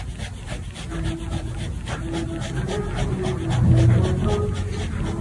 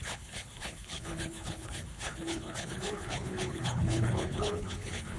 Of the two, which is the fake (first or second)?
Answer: second